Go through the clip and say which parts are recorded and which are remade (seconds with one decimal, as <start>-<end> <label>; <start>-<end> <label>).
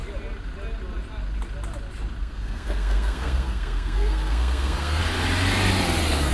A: 0.0-2.2 recorded; 2.2-5.0 remade; 5.0-6.3 recorded